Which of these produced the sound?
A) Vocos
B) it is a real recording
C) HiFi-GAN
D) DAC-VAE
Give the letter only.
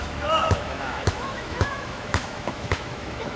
D